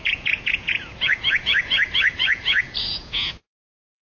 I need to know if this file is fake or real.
fake